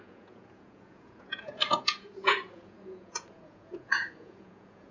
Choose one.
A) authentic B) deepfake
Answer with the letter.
B